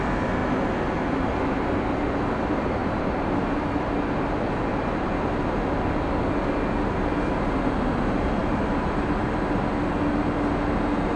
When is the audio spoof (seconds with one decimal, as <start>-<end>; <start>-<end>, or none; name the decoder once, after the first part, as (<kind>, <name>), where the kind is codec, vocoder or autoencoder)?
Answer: 2.8-3.3 (vocoder, BigVGAN v2); 8.4-9.1